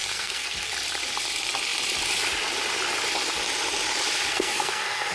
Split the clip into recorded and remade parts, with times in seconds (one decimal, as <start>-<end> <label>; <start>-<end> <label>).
0.0-0.7 remade; 0.7-4.3 recorded; 4.3-5.1 remade